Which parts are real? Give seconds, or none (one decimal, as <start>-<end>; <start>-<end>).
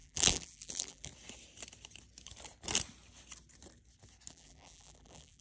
1.1-4.3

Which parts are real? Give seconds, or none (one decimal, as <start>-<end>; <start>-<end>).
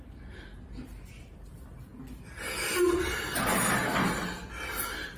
0.0-5.2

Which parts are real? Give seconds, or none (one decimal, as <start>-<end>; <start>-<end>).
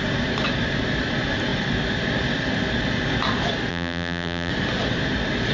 0.0-3.7; 4.5-5.5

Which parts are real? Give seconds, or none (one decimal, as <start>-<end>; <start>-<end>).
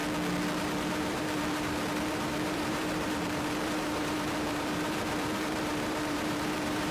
0.0-0.6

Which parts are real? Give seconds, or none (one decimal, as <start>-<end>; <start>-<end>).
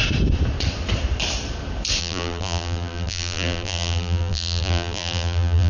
0.0-2.0